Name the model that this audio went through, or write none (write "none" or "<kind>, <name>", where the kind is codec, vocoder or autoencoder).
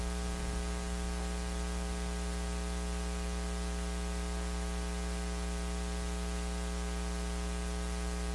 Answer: none